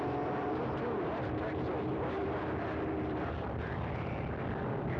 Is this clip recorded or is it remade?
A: remade